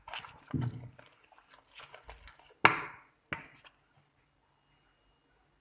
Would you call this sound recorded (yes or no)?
yes